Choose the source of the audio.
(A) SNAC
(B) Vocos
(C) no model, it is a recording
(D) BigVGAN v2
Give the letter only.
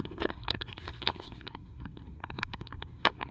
A